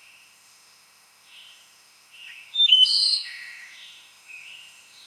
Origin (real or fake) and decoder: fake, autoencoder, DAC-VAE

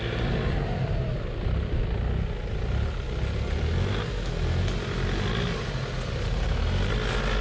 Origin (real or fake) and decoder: real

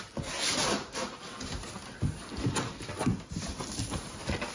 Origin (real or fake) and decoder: real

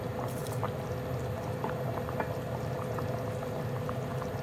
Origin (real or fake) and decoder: real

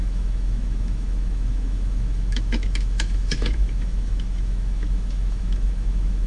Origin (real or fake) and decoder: fake, autoencoder, DAC-VAE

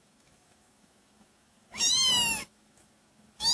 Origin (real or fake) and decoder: fake, autoencoder, DAC-VAE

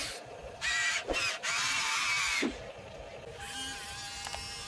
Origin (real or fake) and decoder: real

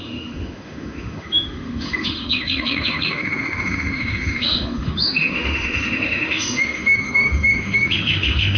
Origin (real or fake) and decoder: fake, autoencoder, DAC-VAE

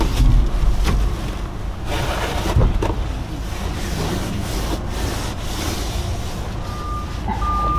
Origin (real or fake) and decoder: real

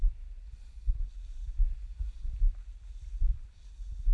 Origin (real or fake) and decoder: real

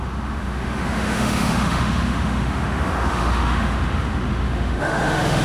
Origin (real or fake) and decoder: fake, autoencoder, DAC-VAE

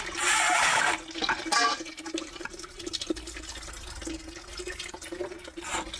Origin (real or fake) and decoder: real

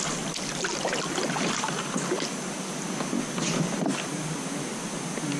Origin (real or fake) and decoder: real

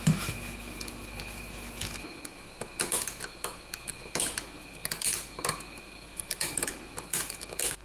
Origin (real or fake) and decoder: fake, autoencoder, DAC-VAE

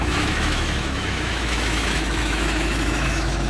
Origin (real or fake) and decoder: fake, autoencoder, DAC-VAE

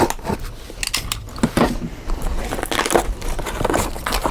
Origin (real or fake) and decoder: real